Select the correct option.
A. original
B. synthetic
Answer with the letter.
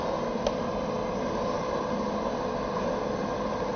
A